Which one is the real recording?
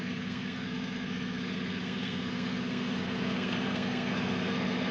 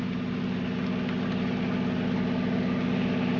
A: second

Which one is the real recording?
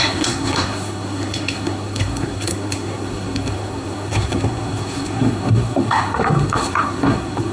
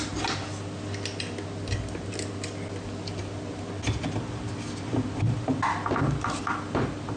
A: second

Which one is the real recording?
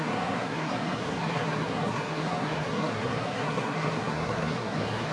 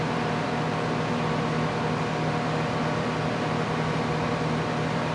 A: second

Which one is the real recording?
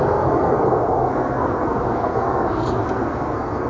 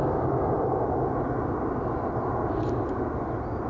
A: second